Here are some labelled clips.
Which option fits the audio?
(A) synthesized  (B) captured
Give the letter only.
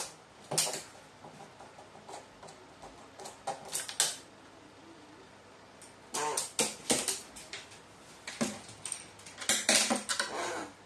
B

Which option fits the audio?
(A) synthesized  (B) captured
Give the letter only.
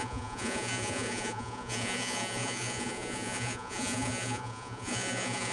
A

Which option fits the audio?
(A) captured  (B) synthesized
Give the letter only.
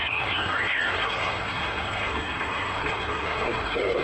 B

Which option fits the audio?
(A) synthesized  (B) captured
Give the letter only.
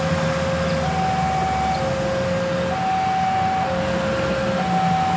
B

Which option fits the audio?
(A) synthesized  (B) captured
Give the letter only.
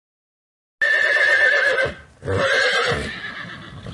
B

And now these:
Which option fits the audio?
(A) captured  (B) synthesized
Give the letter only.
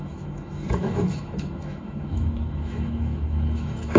B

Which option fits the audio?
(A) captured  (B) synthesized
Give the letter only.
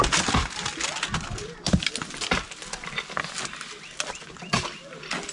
A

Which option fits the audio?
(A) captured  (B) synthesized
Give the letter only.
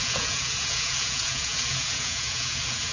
B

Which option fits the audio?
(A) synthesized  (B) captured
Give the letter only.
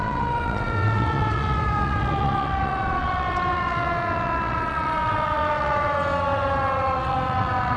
A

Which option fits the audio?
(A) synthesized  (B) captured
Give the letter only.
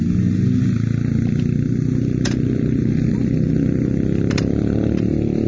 B